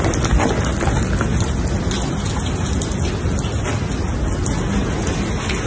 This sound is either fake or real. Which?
real